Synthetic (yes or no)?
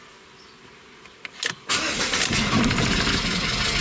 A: no